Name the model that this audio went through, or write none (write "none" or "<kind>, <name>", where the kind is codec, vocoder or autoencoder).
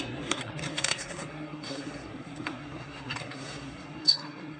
codec, SNAC